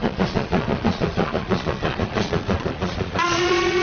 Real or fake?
fake